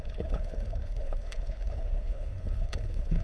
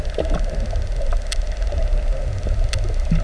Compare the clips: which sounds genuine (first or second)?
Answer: second